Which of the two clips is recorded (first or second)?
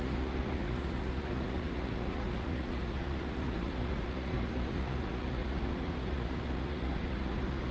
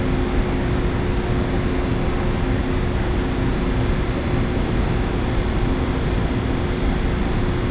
second